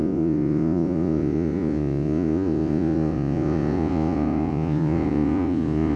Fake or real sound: fake